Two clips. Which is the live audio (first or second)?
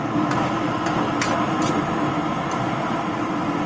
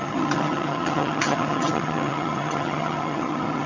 first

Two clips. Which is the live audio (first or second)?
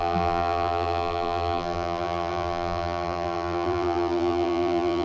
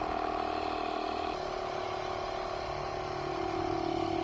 second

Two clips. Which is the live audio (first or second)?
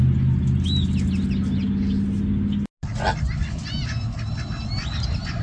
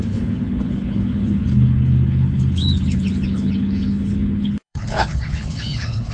first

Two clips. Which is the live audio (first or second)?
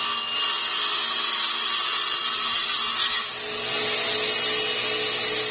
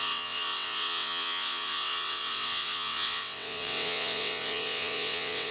first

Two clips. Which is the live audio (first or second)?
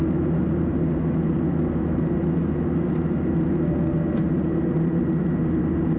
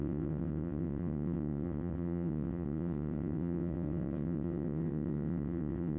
first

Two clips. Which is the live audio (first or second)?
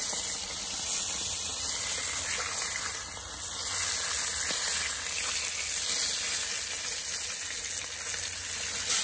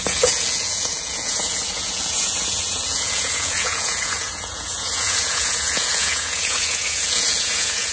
first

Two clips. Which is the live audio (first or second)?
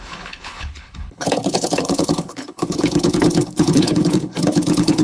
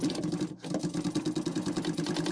second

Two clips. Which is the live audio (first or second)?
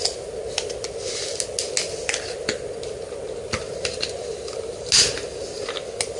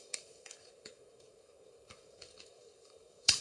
first